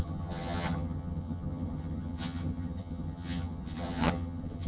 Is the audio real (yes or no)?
no